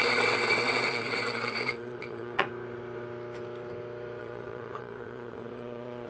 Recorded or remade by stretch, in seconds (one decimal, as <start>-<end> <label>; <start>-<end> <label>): 0.0-2.5 remade; 2.5-4.2 recorded; 4.2-6.1 remade